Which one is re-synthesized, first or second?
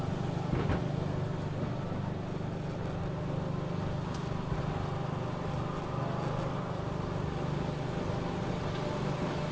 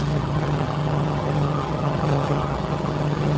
second